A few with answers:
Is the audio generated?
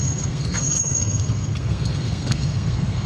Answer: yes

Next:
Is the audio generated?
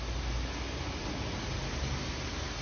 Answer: no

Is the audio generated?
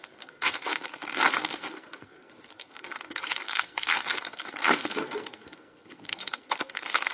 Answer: yes